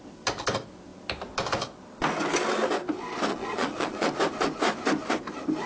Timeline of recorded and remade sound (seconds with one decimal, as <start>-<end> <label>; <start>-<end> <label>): 0.0-3.3 recorded; 3.3-4.2 remade; 4.2-5.7 recorded